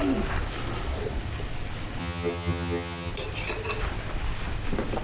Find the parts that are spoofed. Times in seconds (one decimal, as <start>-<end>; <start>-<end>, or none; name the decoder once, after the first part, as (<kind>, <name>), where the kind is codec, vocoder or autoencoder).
2.0-3.1 (vocoder, HiFi-GAN)